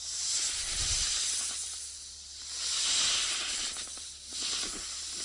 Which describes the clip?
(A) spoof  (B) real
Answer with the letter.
B